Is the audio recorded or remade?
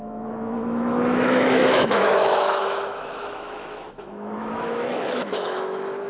remade